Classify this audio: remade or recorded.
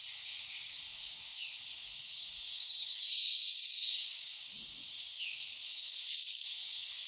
remade